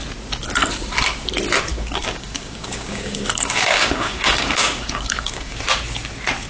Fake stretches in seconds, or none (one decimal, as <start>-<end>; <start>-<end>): 1.7-5.6